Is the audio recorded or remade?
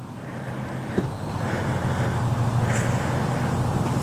recorded